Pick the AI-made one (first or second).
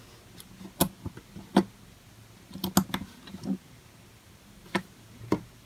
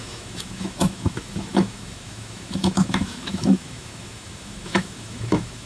second